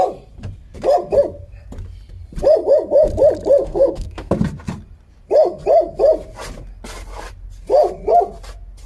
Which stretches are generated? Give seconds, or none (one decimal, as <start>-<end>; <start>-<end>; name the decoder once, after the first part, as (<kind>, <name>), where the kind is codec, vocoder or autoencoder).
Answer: 3.6-4.3 (codec, SNAC)